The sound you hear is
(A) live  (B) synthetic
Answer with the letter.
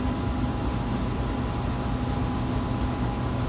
A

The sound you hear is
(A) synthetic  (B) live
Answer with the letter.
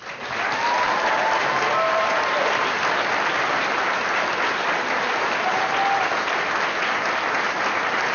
B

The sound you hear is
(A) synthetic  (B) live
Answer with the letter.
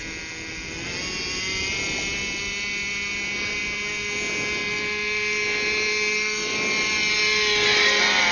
B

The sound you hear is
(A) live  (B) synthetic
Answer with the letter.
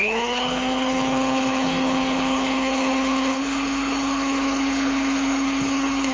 B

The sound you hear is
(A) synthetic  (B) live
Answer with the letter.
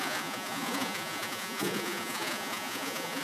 A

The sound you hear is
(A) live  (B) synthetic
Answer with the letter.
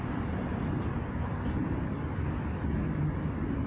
A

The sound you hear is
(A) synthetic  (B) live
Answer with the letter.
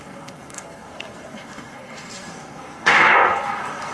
A